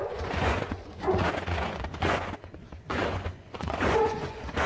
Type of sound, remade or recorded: remade